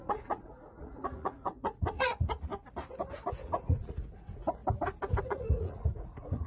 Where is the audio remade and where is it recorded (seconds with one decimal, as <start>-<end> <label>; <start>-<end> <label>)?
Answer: 0.0-2.5 remade; 2.5-3.3 recorded; 3.3-4.6 remade; 4.6-5.2 recorded; 5.2-6.5 remade